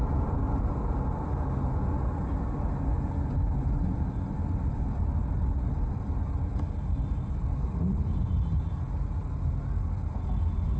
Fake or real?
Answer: real